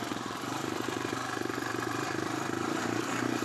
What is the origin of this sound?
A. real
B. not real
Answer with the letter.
B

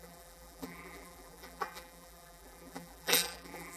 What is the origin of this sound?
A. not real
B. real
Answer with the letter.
A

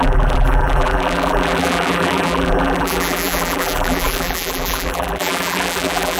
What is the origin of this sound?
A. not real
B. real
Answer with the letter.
A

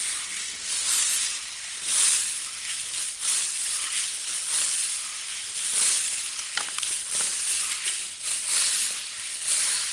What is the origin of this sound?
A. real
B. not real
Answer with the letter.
A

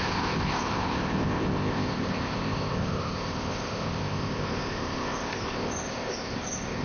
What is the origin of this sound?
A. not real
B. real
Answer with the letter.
A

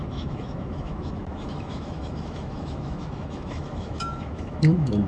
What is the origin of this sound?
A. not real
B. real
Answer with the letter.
A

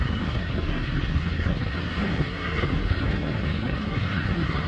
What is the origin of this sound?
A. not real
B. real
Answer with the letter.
A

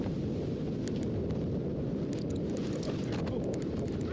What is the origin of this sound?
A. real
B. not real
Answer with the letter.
A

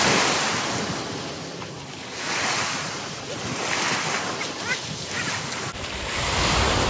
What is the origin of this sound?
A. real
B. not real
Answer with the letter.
A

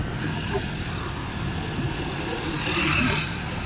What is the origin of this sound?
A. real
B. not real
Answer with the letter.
A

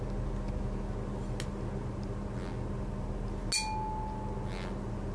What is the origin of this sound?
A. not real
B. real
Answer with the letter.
B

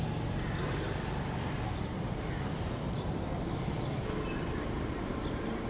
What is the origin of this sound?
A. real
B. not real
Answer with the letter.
A